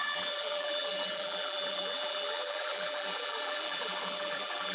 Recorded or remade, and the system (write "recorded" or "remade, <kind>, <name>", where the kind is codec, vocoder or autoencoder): remade, vocoder, BigVGAN v2